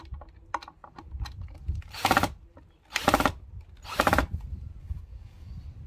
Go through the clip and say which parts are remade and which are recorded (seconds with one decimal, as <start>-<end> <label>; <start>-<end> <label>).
0.0-4.8 recorded; 4.8-5.5 remade; 5.5-5.9 recorded